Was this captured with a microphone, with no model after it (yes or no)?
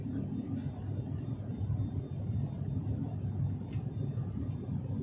yes